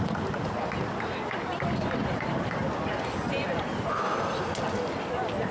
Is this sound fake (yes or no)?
no